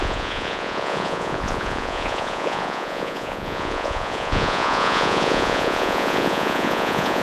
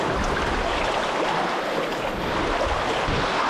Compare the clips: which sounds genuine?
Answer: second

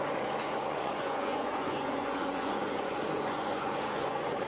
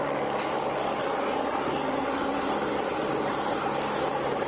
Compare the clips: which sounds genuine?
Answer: second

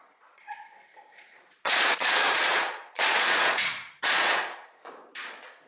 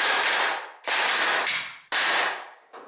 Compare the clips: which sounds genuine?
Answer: second